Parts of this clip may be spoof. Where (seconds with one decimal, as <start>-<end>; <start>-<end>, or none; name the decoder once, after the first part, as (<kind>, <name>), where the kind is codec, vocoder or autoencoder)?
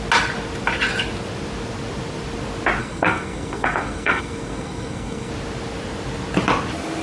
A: 2.8-5.3 (codec, SNAC)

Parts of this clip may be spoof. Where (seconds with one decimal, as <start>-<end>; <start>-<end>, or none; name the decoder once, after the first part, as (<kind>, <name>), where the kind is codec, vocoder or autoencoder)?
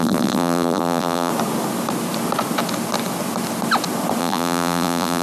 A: 0.0-1.3 (vocoder, BigVGAN v2); 4.2-5.2